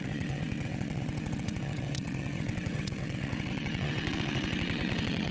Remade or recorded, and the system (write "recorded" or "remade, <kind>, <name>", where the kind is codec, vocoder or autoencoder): remade, vocoder, WaveNeXt